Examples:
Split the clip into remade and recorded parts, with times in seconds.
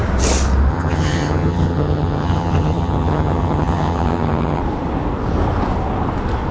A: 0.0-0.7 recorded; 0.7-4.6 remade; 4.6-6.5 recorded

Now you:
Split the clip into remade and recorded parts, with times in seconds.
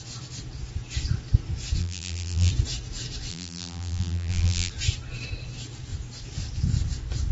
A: 0.0-1.8 recorded; 1.8-2.5 remade; 2.5-3.3 recorded; 3.3-4.7 remade; 4.7-7.3 recorded